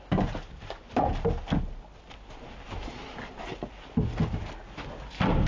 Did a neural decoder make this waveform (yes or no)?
no